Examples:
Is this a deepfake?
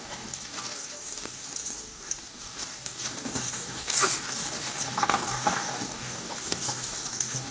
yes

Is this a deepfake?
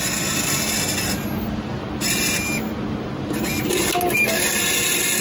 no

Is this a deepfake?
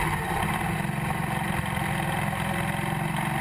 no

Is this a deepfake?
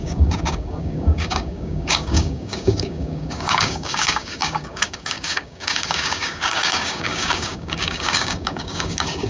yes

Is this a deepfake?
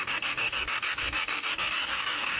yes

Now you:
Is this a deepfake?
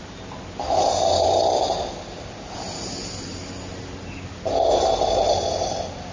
no